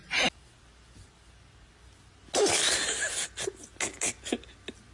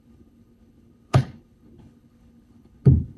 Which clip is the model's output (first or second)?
second